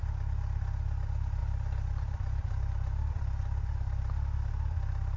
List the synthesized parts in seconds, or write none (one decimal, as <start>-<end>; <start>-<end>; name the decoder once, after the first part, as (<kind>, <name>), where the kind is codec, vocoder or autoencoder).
1.4-4.5 (vocoder, BigVGAN v2)